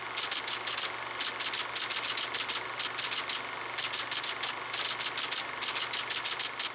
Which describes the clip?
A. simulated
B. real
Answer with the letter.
B